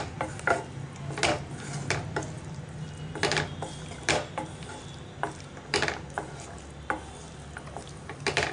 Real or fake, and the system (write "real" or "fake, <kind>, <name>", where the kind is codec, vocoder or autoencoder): real